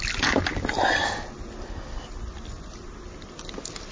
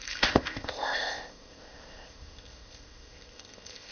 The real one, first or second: first